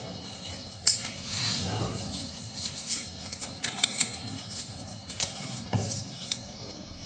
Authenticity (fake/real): fake